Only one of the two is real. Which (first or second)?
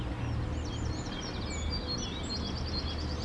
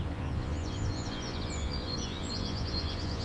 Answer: first